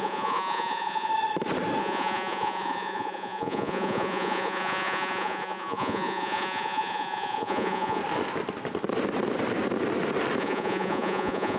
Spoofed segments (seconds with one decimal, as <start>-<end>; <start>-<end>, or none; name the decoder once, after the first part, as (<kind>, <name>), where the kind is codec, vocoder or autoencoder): 0.0-1.1 (vocoder, Vocos); 1.8-8.0; 10.4-11.6